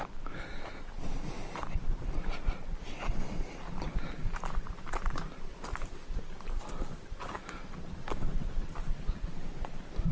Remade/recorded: remade